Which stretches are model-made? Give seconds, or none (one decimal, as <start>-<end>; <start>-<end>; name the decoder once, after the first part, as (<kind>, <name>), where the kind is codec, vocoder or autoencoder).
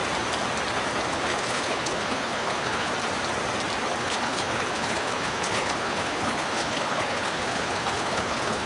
1.1-2.9 (codec, HILCodec); 4.0-8.7